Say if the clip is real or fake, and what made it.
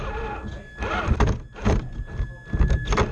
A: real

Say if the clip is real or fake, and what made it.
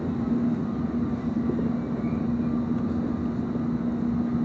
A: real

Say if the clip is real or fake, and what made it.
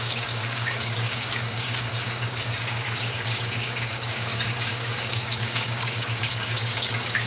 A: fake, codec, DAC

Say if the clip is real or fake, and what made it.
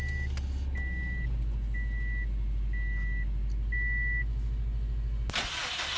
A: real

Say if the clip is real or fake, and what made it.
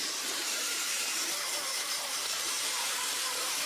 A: fake, vocoder, BigVGAN v2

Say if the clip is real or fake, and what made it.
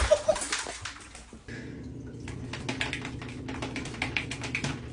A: real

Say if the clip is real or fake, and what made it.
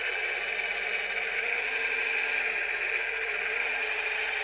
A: real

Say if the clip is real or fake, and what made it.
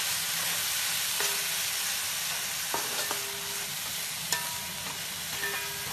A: real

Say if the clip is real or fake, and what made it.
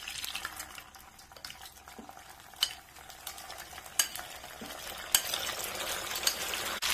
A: real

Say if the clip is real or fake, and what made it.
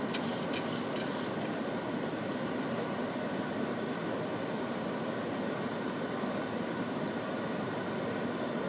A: real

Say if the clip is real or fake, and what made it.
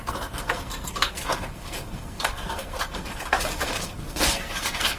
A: fake, codec, SNAC